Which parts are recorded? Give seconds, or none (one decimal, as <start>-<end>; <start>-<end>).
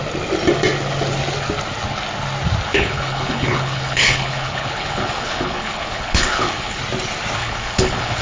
0.0-2.7; 6.8-7.4